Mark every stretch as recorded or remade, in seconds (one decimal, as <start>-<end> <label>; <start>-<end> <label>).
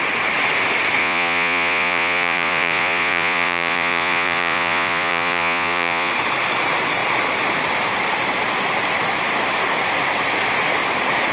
0.0-1.0 recorded; 1.0-6.1 remade; 6.1-11.3 recorded